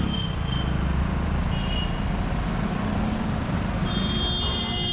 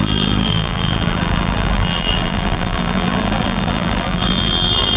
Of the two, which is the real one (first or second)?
first